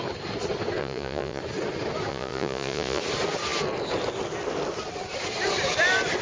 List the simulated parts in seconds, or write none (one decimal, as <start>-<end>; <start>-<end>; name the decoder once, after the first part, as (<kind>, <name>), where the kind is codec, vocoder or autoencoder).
0.8-1.4 (vocoder, Vocos); 2.1-3.0

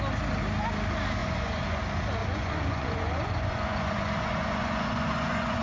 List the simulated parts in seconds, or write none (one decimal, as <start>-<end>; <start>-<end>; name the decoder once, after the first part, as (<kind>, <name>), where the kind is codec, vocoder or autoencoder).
1.2-1.8 (vocoder, Vocos); 2.2-5.6

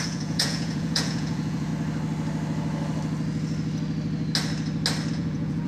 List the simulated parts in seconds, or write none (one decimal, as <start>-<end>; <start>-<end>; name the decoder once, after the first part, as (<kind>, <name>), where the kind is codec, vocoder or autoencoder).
0.0-1.7 (vocoder, Vocos); 5.1-5.7

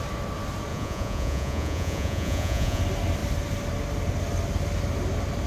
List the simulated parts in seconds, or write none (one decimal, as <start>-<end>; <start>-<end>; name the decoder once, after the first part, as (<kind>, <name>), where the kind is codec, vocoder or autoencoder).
0.7-2.8 (vocoder, Vocos)